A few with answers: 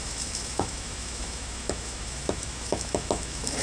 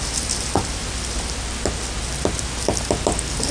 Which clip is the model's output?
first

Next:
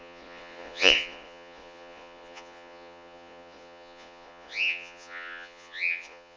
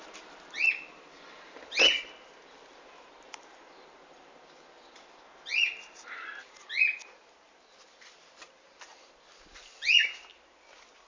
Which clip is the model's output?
first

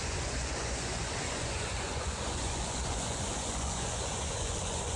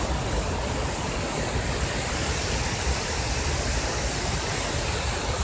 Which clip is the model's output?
first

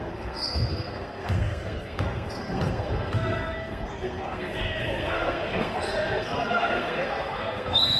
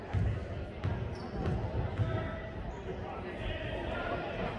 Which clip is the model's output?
first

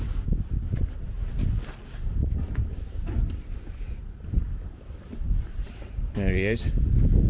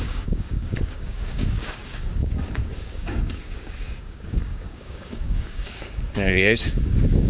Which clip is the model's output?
second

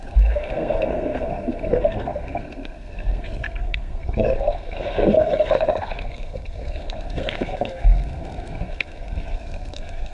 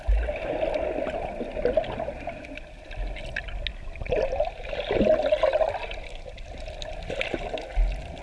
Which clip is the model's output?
first